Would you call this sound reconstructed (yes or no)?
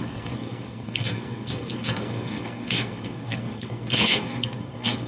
yes